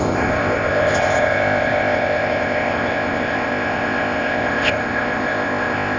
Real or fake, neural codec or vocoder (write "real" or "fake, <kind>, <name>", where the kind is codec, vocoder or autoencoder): fake, codec, ZipCodec